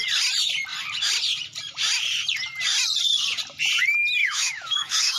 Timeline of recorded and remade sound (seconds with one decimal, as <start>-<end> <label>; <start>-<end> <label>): 0.0-4.2 recorded; 4.2-5.2 remade